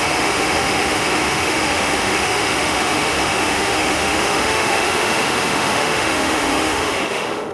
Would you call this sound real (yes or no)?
no